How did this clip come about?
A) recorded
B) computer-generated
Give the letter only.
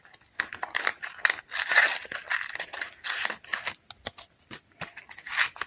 A